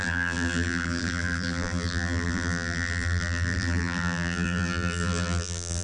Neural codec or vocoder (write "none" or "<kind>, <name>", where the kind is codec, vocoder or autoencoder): vocoder, BigVGAN v2